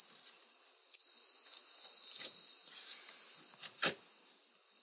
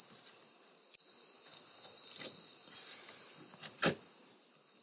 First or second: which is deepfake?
second